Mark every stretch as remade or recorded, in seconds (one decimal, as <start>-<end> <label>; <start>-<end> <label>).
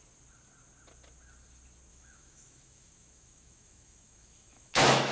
0.0-1.9 recorded; 1.9-5.1 remade